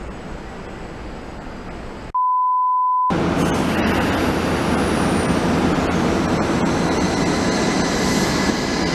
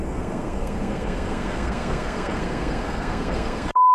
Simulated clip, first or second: second